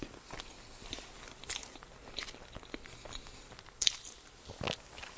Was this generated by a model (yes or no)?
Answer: no